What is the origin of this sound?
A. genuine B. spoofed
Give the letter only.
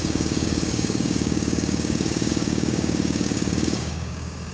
B